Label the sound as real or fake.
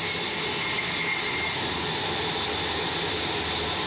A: real